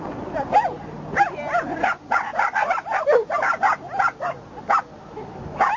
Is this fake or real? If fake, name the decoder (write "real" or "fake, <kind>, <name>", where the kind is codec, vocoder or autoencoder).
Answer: real